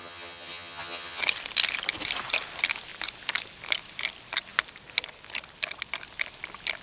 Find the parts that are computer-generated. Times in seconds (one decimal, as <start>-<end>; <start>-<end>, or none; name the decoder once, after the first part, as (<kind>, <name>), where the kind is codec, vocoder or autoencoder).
0.0-1.2 (vocoder, HiFi-GAN)